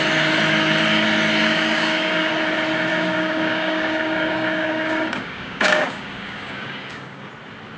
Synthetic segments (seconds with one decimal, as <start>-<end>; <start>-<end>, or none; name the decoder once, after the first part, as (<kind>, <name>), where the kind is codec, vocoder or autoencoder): 1.4-2.3 (codec, DAC); 2.9-7.3